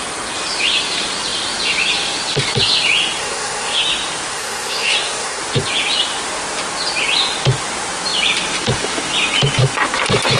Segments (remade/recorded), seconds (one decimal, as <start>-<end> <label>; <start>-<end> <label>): 0.0-3.2 recorded; 3.2-3.8 remade; 3.8-4.3 recorded; 4.3-5.4 remade; 5.4-10.4 recorded